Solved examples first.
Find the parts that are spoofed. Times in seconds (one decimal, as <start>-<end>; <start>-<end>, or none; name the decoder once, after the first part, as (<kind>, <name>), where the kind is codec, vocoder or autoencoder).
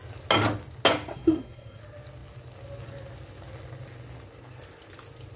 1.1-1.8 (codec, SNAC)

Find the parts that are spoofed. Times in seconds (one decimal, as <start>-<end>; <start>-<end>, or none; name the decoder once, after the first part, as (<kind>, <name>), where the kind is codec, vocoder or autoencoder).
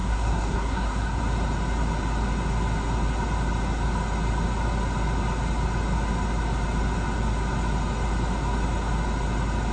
0.0-1.2 (codec, SNAC)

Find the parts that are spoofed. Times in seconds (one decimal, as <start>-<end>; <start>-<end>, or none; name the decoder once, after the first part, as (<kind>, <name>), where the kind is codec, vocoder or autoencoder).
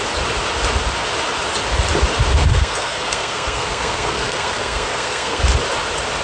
2.4-5.4 (codec, SNAC)